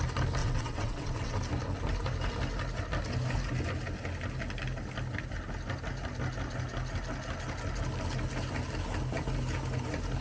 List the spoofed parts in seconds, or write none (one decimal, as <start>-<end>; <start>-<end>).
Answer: 0.4-1.4